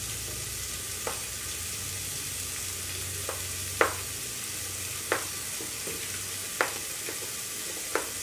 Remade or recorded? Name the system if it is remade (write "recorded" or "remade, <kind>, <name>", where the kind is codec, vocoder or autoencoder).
recorded